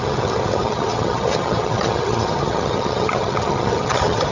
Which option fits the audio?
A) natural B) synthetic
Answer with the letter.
B